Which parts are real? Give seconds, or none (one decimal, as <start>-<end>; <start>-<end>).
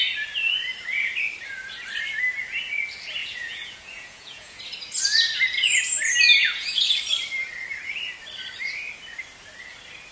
0.0-3.2; 4.6-6.4; 6.9-10.1